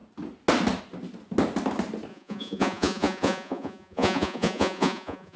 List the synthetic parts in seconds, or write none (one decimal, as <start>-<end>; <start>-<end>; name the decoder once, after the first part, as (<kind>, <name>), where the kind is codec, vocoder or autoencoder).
2.1-5.4 (vocoder, Vocos)